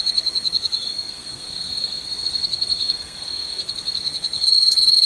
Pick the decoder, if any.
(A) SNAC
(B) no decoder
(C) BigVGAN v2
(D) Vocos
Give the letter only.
A